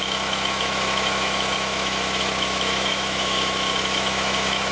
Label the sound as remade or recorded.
remade